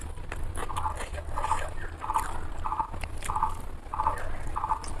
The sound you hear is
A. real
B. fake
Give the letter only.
A